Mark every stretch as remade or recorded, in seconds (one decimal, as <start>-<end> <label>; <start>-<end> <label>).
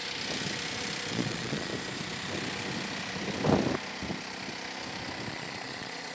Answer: 0.0-1.1 recorded; 1.1-1.7 remade; 1.7-5.3 recorded; 5.3-6.1 remade